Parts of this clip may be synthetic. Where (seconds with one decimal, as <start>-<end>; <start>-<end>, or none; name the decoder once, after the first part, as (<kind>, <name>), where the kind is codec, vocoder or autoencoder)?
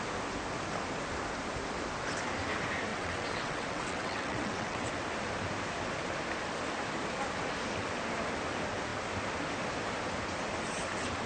2.9-4.9 (vocoder, WaveNeXt)